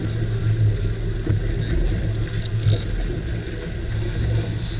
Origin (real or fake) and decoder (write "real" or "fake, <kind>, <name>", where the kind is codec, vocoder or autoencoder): real